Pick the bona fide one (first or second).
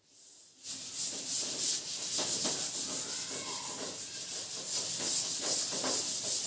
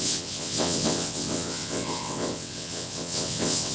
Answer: first